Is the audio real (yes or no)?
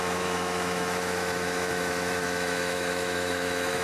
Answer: no